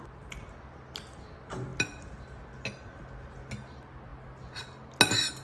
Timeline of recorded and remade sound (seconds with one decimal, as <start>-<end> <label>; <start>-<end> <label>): 0.0-5.4 recorded